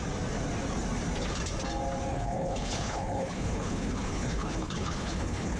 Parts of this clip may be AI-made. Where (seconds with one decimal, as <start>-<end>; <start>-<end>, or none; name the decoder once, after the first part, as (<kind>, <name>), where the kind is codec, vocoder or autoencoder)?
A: 2.1-5.6 (codec, HILCodec)